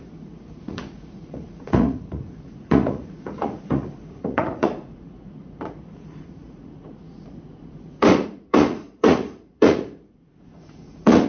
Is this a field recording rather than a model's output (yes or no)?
no